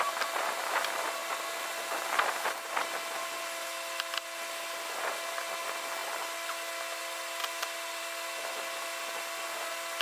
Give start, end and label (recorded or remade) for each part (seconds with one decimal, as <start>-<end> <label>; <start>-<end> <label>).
0.0-10.0 recorded